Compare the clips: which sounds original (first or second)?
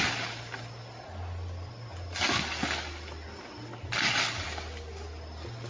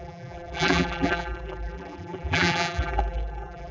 first